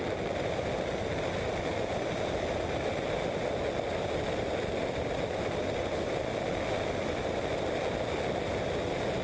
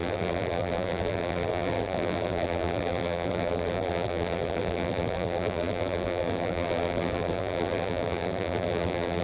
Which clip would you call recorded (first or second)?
first